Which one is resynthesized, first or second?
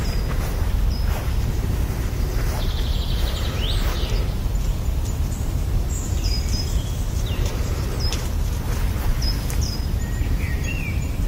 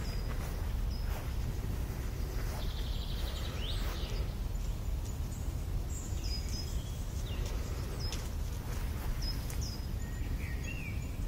first